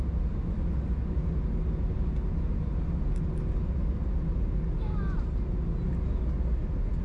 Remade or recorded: recorded